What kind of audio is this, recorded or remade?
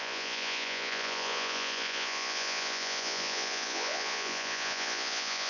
remade